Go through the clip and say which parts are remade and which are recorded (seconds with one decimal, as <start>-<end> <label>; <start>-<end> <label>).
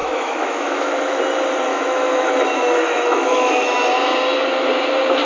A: 0.0-1.2 remade; 1.2-1.7 recorded; 1.7-3.8 remade; 3.8-5.2 recorded